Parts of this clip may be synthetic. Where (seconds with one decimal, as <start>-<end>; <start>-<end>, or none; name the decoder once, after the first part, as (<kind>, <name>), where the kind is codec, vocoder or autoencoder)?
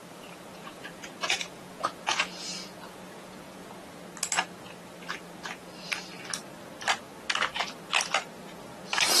0.0-3.9 (vocoder, Vocos)